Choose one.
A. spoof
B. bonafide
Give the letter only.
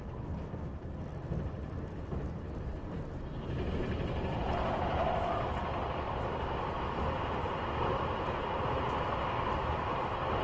B